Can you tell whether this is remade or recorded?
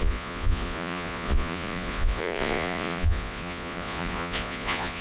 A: remade